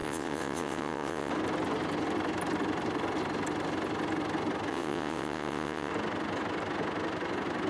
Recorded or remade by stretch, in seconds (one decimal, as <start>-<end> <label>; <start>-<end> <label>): 0.0-1.3 remade; 1.3-4.7 recorded; 4.7-5.9 remade; 5.9-7.7 recorded